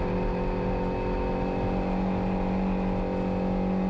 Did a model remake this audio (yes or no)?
no